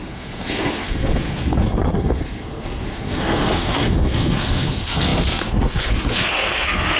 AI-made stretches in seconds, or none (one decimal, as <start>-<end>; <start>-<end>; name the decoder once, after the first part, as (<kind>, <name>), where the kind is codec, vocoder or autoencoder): 0.0-7.0 (codec, SNAC)